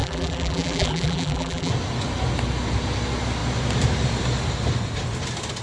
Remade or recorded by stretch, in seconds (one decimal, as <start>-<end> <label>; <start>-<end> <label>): 0.0-1.7 remade; 1.7-5.6 recorded

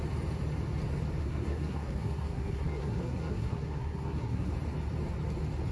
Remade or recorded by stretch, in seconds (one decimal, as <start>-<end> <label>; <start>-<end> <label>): 0.0-1.2 recorded; 1.2-4.5 remade; 4.5-5.7 recorded